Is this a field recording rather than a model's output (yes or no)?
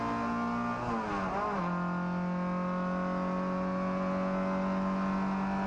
yes